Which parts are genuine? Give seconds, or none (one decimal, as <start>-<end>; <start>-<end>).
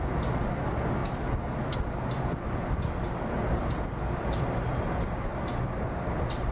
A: 0.0-6.5